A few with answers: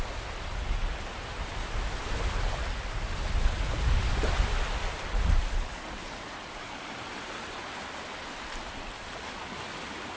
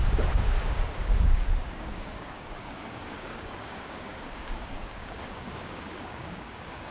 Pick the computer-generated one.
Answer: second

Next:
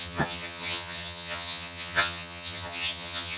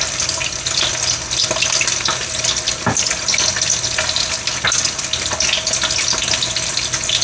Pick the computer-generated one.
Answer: first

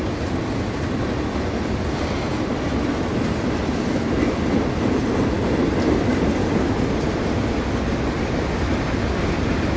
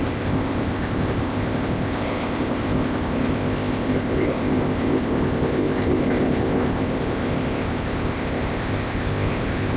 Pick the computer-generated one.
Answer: second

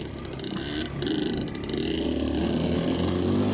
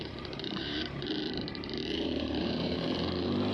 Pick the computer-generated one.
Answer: second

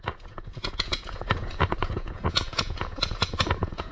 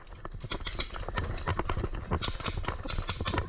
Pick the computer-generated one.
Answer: first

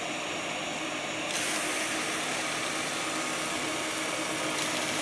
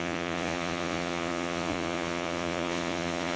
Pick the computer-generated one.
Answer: second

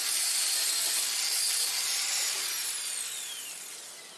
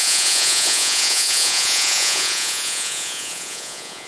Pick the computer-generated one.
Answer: second